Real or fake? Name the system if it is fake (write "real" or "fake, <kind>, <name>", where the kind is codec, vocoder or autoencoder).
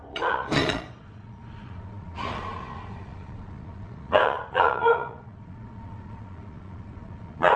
fake, vocoder, Vocos